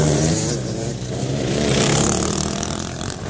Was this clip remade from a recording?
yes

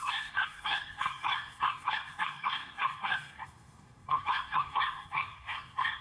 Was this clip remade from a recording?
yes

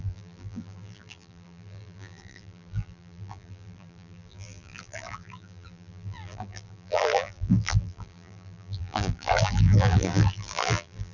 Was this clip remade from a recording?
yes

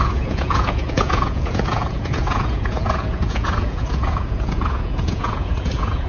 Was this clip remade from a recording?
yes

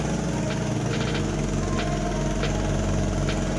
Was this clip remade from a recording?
no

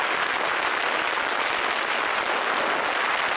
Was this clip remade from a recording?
no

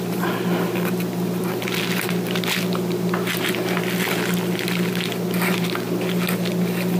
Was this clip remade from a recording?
no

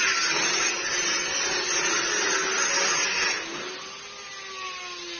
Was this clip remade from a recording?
no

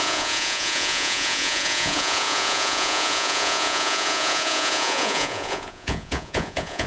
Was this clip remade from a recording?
yes